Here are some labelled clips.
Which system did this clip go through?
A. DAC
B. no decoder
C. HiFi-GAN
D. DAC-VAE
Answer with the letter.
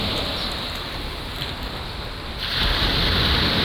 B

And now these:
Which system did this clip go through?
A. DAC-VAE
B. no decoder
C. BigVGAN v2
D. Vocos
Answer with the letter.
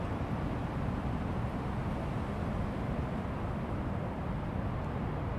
B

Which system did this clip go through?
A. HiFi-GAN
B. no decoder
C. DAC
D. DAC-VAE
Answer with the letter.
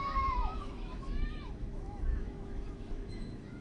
D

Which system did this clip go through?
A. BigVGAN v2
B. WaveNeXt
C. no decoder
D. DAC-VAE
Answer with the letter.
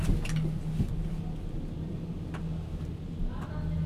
C